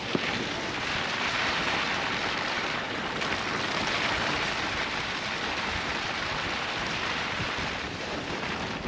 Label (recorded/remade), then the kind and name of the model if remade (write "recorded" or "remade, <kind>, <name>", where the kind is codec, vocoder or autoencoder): remade, vocoder, BigVGAN v2